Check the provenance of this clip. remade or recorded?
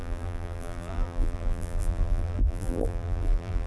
remade